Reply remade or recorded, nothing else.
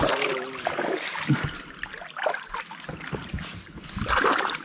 remade